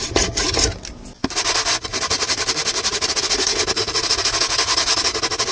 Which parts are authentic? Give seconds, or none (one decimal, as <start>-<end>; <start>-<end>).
0.0-5.5